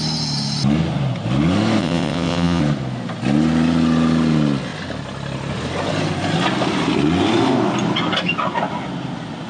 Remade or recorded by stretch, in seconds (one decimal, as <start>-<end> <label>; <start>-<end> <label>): 0.0-1.8 recorded; 1.8-2.6 remade; 2.6-9.5 recorded